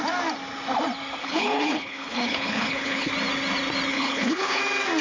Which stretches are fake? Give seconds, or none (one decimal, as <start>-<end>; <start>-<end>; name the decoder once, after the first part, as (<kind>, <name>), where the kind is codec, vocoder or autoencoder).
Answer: 1.2-3.1 (codec, HILCodec); 3.9-4.6